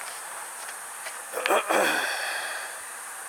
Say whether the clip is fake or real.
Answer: fake